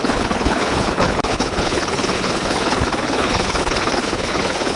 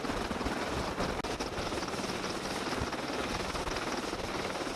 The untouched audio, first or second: second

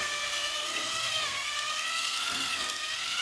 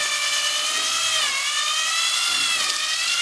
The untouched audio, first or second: second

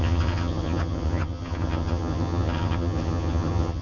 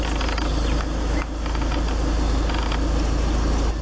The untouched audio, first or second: second